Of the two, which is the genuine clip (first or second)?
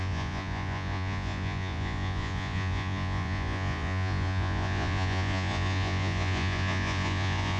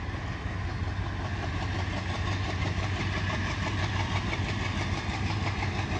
second